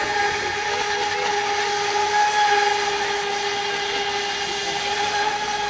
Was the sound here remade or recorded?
recorded